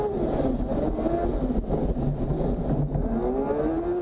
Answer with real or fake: real